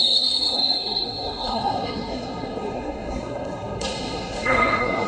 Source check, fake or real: fake